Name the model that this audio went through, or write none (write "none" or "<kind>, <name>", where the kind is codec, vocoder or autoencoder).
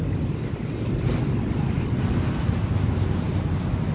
none